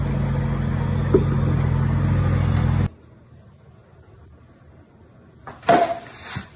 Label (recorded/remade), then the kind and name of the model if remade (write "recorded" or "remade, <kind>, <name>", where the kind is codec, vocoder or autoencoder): recorded